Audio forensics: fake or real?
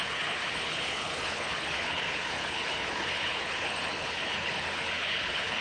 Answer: fake